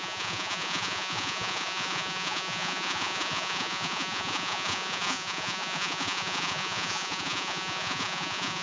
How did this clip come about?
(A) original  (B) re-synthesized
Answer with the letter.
B